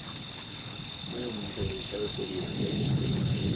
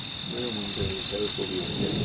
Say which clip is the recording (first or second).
second